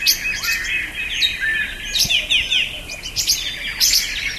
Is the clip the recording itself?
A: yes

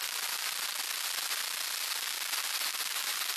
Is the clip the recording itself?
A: yes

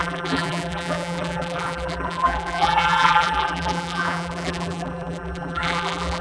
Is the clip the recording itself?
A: no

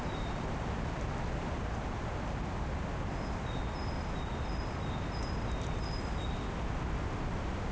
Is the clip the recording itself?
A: yes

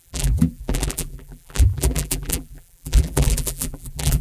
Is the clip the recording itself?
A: no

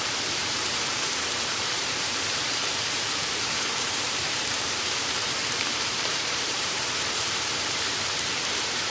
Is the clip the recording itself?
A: no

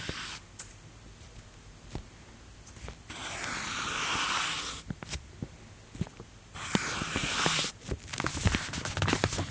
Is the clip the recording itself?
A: yes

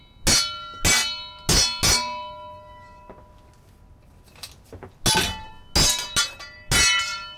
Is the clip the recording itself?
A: yes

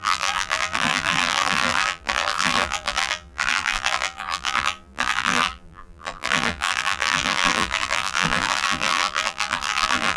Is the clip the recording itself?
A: no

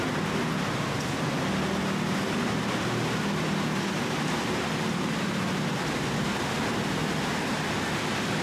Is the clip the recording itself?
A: yes